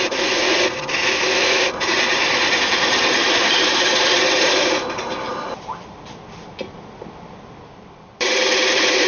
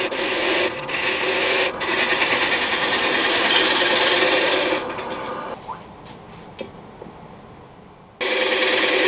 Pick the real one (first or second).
second